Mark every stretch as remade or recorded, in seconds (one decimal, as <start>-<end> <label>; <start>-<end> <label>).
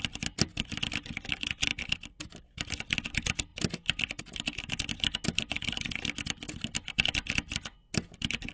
0.0-8.5 recorded